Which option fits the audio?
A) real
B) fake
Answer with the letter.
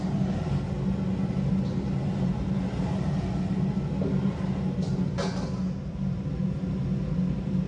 A